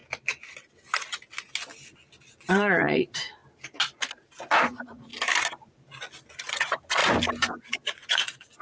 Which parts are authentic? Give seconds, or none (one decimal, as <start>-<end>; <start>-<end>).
0.0-2.5; 3.4-4.6; 5.1-6.5; 7.0-7.8

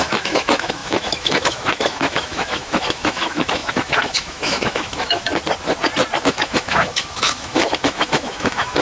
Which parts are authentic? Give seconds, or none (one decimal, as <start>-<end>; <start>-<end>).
5.3-6.2

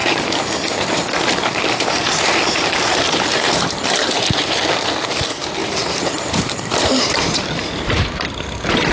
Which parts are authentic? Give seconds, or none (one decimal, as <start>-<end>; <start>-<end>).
4.8-5.6

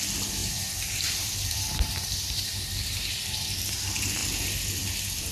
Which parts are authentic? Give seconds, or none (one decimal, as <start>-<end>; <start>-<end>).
0.0-0.4; 3.6-5.3

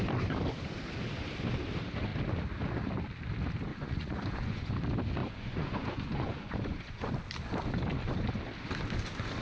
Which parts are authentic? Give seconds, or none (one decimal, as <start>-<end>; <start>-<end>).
0.0-3.7; 4.7-5.2; 7.1-9.4